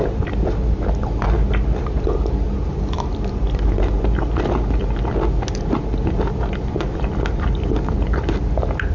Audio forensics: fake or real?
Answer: real